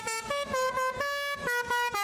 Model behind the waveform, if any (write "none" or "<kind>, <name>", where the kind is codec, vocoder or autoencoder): autoencoder, DAC-VAE